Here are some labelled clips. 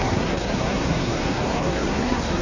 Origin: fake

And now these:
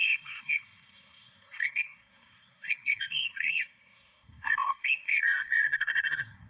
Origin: fake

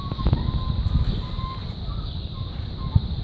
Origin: fake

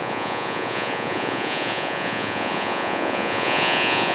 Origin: fake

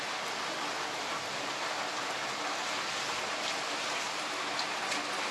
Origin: real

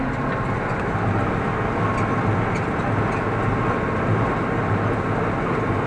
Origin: real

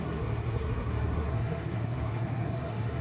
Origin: fake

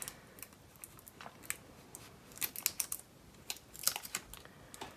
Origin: real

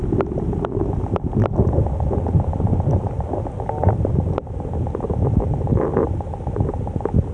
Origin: real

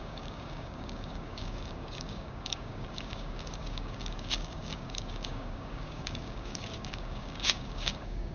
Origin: fake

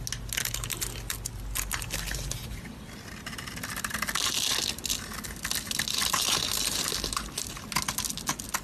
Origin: real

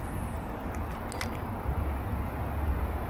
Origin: real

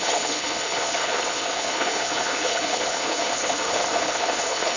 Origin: fake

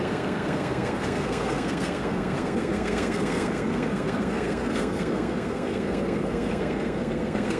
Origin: fake